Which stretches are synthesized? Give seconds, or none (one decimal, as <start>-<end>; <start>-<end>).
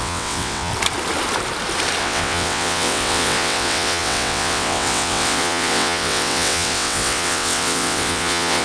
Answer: 0.0-0.7; 2.0-8.6